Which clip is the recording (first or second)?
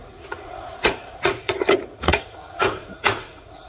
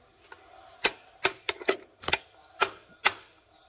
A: second